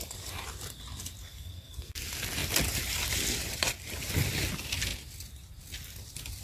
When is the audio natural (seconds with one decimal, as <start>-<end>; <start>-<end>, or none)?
0.0-1.2; 2.0-6.4